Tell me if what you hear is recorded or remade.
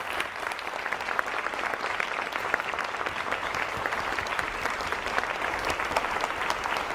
remade